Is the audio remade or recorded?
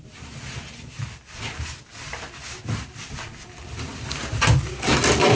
recorded